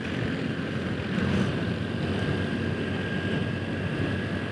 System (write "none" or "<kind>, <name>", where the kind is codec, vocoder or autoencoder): none